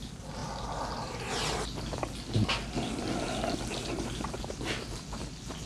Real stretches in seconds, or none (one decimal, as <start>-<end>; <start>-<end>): 0.0-5.7